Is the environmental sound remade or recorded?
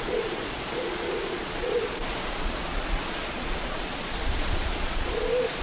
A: remade